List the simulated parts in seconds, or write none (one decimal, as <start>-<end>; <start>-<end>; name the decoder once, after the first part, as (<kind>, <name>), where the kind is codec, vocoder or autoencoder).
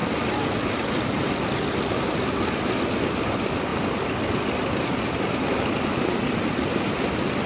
none